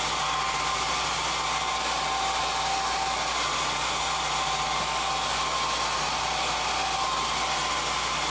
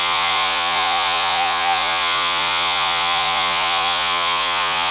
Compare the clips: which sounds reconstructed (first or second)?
second